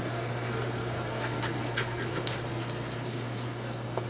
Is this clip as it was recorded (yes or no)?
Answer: no